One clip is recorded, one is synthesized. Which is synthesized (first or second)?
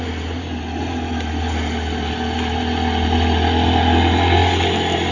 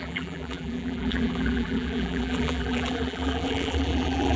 second